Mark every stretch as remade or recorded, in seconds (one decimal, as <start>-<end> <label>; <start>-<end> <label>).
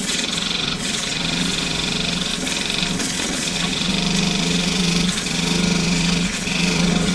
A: 0.0-2.3 remade; 2.3-3.0 recorded; 3.0-3.9 remade; 3.9-4.4 recorded; 4.4-7.1 remade